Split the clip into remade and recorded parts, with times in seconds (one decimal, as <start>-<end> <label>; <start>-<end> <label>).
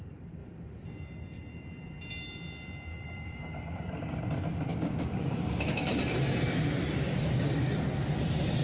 0.0-2.9 recorded; 2.9-4.2 remade; 4.2-4.7 recorded; 4.7-6.0 remade; 6.0-8.6 recorded